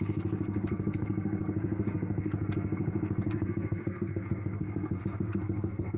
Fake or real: fake